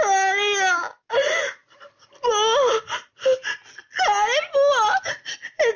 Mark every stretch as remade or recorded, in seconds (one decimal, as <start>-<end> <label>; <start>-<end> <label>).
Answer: 0.0-5.8 recorded